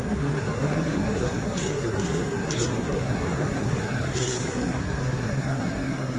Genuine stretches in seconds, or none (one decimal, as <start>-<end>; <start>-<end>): none